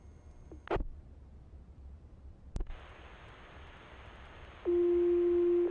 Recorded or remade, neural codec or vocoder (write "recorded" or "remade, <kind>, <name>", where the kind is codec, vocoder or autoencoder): recorded